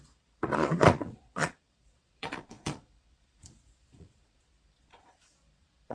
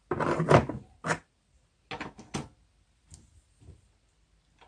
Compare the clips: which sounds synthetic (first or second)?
first